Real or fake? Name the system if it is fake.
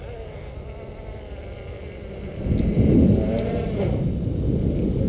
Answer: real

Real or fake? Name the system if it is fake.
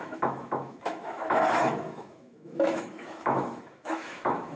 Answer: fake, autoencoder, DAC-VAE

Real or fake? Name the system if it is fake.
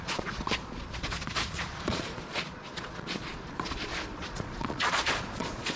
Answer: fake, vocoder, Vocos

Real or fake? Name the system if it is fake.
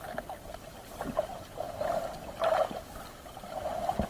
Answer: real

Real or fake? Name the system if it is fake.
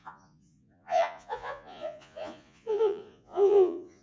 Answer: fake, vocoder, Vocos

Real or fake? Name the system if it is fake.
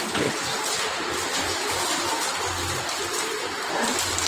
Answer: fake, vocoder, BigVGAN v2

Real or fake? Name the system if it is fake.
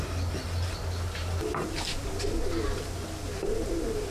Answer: real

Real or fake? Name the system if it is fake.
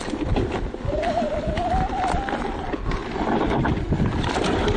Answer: real